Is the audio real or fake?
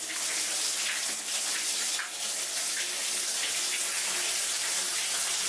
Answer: real